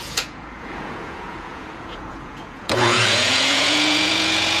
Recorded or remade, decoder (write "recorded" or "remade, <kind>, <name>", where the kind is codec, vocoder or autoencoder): remade, vocoder, Vocos